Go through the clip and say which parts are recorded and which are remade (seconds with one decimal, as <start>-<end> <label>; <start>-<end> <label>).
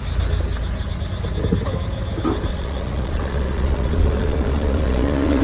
0.0-2.5 recorded; 2.5-5.4 remade